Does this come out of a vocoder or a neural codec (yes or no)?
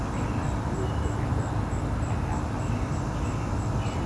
no